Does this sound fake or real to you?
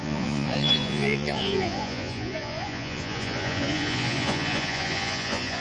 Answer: fake